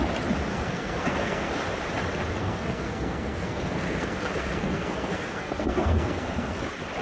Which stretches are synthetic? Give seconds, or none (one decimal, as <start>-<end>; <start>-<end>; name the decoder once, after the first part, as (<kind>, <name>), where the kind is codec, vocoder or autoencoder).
0.5-1.5 (codec, SNAC); 2.4-6.6